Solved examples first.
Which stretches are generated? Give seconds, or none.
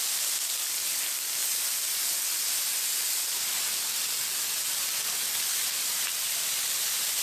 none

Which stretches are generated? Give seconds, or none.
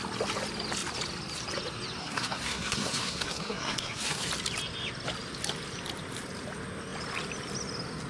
2.0-4.3 (codec, SNAC)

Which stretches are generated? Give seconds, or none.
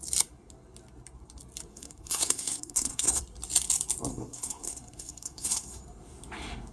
1.7-3.2 (codec, SNAC); 4.1-5.8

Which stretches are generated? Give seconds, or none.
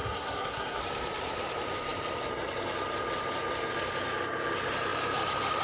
0.0-0.8 (codec, SNAC)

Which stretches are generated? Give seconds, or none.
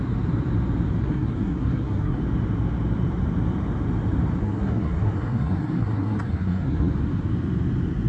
1.0-2.2 (codec, SNAC); 4.4-6.9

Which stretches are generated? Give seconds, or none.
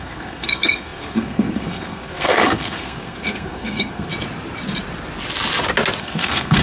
0.0-4.1 (codec, SNAC); 6.0-6.6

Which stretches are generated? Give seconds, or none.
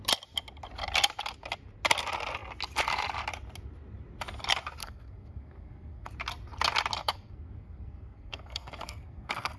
4.8-6.1 (codec, SNAC); 7.0-9.6